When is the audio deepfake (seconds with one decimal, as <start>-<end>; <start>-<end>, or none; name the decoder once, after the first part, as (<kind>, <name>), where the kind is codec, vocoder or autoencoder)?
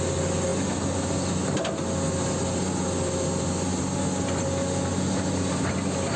none